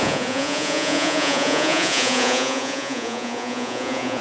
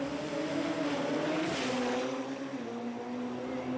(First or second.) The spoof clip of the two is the first